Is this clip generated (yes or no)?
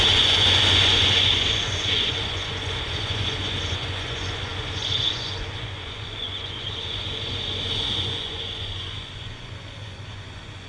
yes